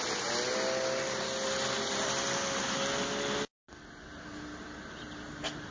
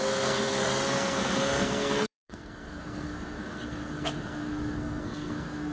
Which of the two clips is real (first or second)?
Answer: first